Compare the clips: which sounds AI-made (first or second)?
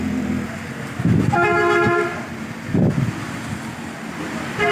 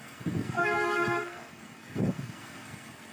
second